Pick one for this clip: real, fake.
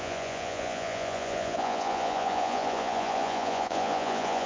fake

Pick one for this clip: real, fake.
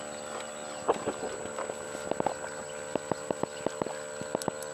real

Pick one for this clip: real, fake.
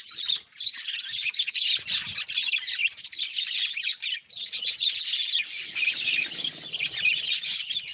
real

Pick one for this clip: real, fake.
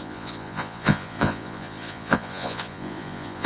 fake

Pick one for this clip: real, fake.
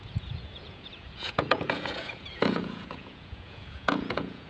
fake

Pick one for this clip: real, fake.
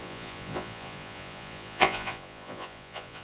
fake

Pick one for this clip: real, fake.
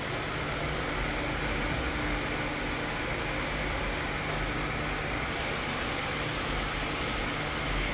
real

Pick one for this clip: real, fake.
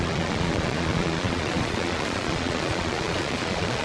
fake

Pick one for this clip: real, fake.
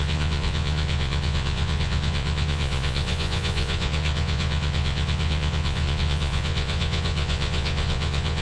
fake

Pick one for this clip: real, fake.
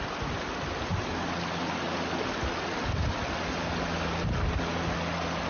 real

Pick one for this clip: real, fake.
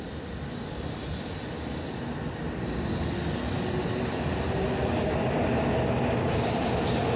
real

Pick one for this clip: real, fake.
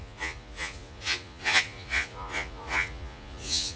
fake